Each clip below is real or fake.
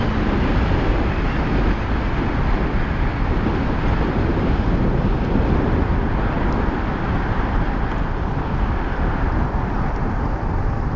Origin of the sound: real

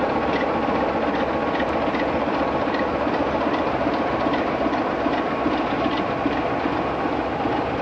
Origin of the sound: real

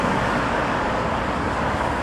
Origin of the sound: fake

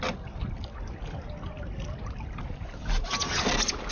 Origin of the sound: real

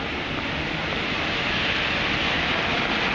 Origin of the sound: real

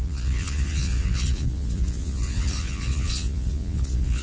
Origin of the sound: fake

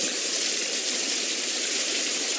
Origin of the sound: real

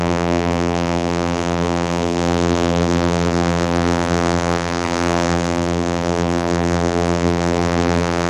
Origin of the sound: fake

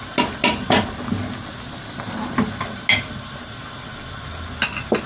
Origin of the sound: real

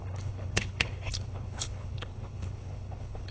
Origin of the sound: fake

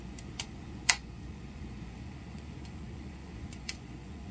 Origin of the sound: fake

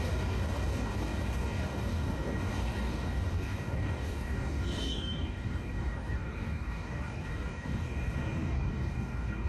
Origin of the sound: fake